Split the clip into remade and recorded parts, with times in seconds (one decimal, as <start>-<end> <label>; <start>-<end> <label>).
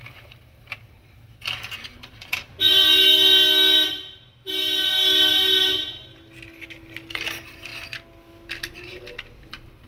0.0-2.5 remade; 2.5-7.1 recorded; 7.1-7.7 remade; 7.7-9.5 recorded; 9.5-9.9 remade